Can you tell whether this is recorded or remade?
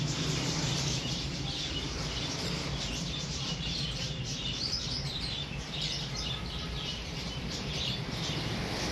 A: remade